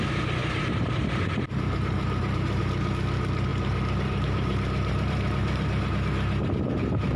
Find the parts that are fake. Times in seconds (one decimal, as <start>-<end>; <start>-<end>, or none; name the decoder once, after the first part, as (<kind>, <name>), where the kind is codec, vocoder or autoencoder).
0.4-2.6 (vocoder, BigVGAN v2); 3.5-5.9